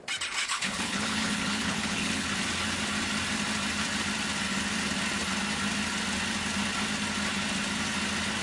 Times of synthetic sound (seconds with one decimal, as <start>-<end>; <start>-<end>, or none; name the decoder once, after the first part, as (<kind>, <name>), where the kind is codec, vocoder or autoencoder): 0.4-2.3 (codec, HILCodec)